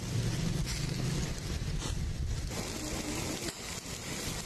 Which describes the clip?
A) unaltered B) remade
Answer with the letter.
A